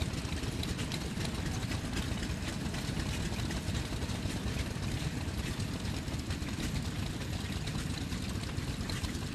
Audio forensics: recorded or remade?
recorded